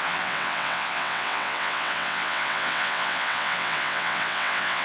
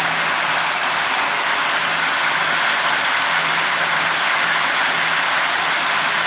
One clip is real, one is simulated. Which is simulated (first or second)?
first